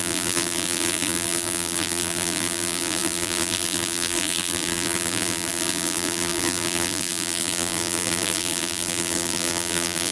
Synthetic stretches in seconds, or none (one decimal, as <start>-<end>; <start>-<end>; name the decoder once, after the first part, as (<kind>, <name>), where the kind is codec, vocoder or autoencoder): 0.0-10.1 (vocoder, BigVGAN v2)

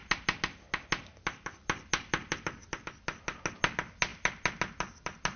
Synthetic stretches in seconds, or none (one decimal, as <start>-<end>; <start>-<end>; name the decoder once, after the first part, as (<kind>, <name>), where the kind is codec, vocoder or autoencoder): none

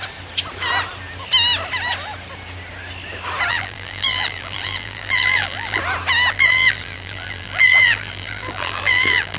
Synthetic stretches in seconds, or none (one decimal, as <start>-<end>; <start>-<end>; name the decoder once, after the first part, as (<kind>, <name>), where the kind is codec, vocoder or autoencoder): 3.5-5.8 (vocoder, BigVGAN v2); 6.3-9.4

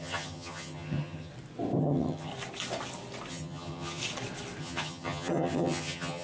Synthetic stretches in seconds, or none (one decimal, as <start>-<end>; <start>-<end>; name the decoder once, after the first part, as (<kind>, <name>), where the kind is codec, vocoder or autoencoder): 0.0-1.3 (vocoder, HiFi-GAN); 1.8-2.3; 3.3-4.0; 4.6-6.2

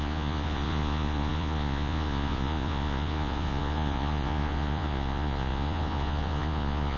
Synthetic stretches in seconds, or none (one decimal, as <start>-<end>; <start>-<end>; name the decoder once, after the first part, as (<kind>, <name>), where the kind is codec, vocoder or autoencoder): 0.0-7.0 (vocoder, Vocos)